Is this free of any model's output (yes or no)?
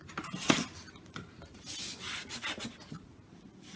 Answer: yes